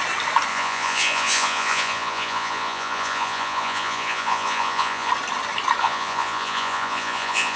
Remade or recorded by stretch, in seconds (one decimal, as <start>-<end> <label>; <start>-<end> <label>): 0.0-0.5 recorded; 0.5-5.1 remade; 5.1-5.8 recorded; 5.8-7.6 remade